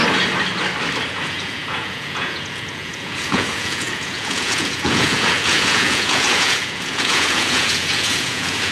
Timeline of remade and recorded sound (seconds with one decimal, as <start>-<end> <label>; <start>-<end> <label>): 0.0-1.1 recorded; 1.1-8.7 remade